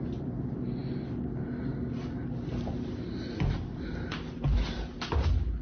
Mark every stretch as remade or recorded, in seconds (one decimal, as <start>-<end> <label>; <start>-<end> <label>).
0.0-5.6 recorded